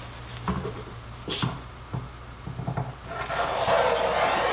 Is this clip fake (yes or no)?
no